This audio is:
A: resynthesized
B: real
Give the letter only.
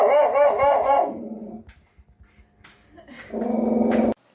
B